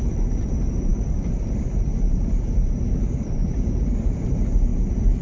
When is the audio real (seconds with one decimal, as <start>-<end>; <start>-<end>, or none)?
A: 4.7-5.2